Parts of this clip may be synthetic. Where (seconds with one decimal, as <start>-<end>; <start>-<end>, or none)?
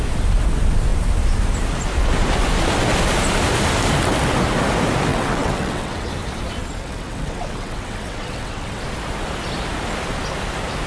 5.1-6.1; 6.6-8.8